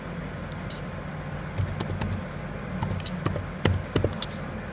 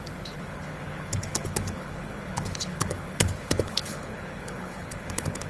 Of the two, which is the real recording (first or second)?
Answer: first